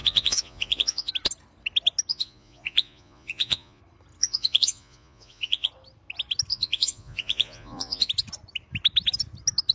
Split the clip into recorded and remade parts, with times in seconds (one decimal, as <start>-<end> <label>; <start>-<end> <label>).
0.0-1.1 remade; 1.1-2.1 recorded; 2.1-3.8 remade; 3.8-4.2 recorded; 4.2-5.7 remade; 5.7-6.5 recorded; 6.5-8.1 remade; 8.1-9.7 recorded